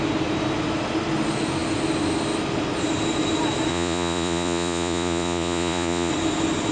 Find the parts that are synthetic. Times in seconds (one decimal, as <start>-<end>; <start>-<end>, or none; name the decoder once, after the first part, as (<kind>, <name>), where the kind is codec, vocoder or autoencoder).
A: 3.7-6.1 (vocoder, Vocos)